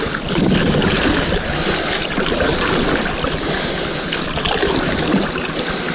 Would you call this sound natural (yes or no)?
yes